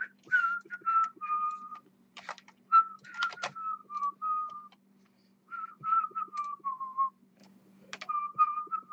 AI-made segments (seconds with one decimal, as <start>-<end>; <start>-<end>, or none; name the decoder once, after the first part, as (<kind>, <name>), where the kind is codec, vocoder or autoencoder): 0.0-7.4 (vocoder, BigVGAN v2); 8.1-8.9